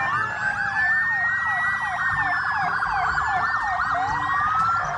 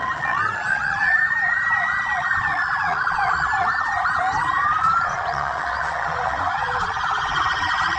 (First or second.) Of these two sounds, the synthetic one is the second